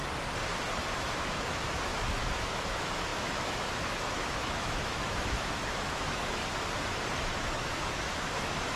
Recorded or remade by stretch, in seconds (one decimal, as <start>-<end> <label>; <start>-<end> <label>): 0.0-1.0 recorded; 1.0-6.4 remade; 6.4-7.2 recorded; 7.2-8.8 remade